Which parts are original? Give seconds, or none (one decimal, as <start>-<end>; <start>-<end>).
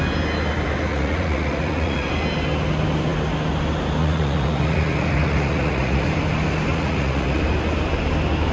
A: 0.0-0.9; 2.1-4.0; 6.1-6.7; 7.4-8.5